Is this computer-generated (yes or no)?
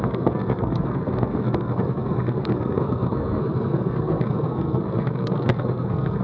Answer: yes